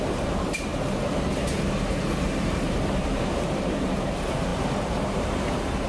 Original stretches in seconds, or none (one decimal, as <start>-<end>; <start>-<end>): none